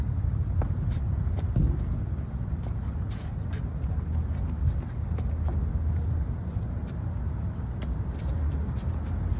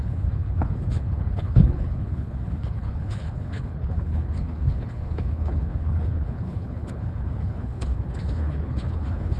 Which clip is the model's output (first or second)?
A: second